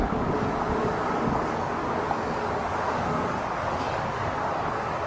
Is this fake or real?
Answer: fake